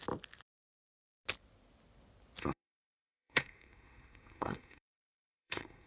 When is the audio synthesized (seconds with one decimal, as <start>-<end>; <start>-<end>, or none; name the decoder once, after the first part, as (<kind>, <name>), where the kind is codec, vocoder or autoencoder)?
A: 2.4-5.9 (codec, SNAC)